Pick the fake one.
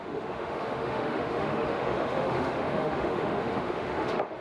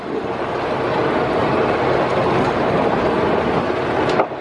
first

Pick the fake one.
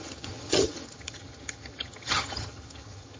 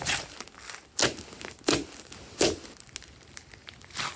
first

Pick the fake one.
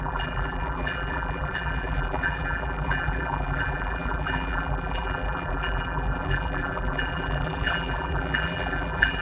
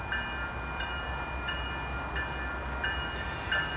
first